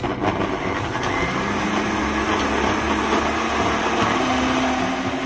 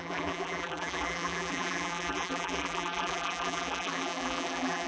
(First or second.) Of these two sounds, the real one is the first